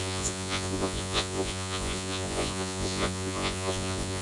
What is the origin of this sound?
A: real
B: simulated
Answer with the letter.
B